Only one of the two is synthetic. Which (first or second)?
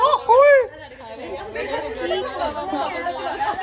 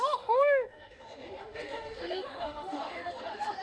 second